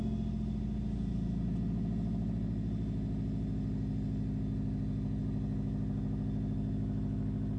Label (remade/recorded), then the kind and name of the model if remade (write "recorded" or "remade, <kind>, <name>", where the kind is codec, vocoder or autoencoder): recorded